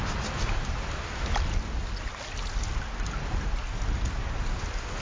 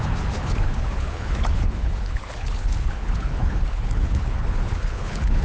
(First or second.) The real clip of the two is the first